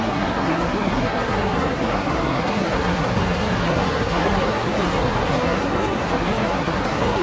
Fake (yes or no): yes